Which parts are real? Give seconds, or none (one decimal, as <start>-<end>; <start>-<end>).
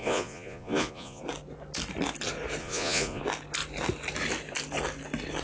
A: 1.2-2.6; 3.2-5.4